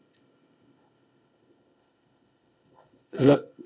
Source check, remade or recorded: remade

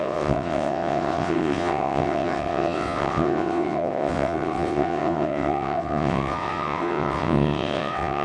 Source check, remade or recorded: remade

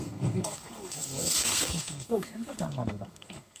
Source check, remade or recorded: remade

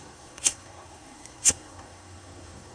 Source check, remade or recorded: remade